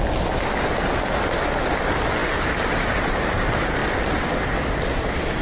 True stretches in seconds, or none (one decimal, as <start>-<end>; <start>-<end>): 0.0-2.2; 3.3-5.4